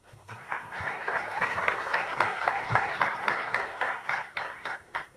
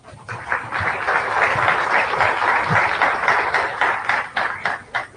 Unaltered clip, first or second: second